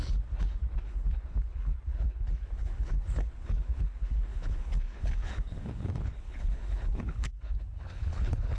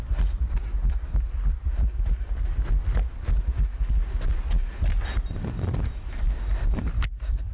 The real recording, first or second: second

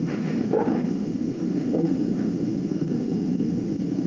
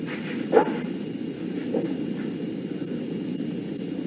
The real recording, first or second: second